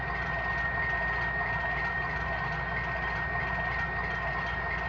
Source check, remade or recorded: recorded